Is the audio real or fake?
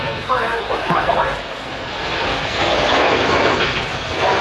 fake